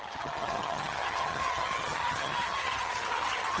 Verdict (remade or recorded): remade